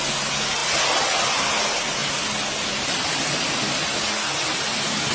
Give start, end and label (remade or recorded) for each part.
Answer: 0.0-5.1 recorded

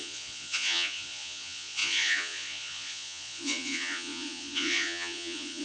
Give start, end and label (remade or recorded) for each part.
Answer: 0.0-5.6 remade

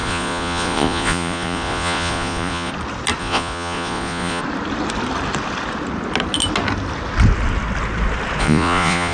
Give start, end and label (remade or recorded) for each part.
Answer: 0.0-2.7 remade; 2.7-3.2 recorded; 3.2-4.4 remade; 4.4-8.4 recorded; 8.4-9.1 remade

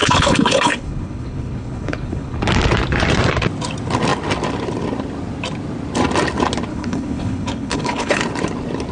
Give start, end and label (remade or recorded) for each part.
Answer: 0.0-2.4 remade; 2.4-6.7 recorded; 6.7-8.2 remade; 8.2-8.9 recorded